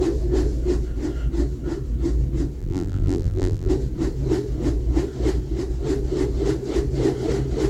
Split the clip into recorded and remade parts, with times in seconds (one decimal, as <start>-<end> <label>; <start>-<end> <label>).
0.0-2.6 recorded; 2.6-3.7 remade; 3.7-7.7 recorded